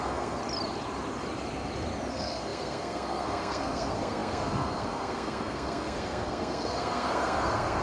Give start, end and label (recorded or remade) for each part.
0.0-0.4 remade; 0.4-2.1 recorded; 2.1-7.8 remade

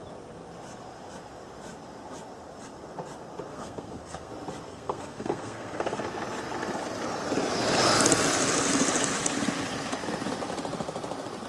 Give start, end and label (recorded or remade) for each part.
0.0-3.5 recorded; 3.5-4.3 remade; 4.3-4.7 recorded; 4.7-6.0 remade; 6.0-11.5 recorded

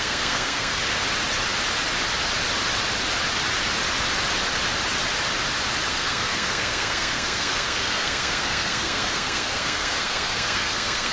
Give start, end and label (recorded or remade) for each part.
0.0-0.8 remade; 0.8-5.9 recorded; 5.9-11.1 remade

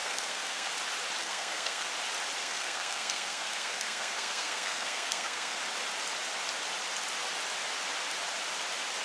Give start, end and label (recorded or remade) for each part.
0.0-0.7 remade; 0.7-1.2 recorded; 1.2-1.9 remade; 1.9-2.4 recorded; 2.4-5.6 remade; 5.6-9.0 recorded

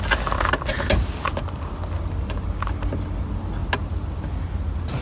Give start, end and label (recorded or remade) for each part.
0.0-5.0 recorded